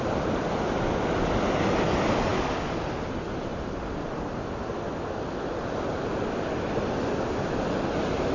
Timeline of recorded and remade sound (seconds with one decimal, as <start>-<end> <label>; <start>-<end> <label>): 0.0-8.3 recorded